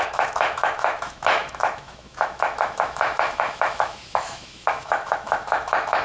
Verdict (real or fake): fake